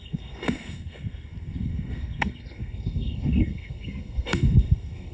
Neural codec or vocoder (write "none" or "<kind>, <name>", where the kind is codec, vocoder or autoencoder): codec, SNAC